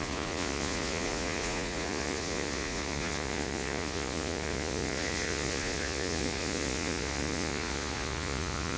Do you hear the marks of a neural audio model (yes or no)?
yes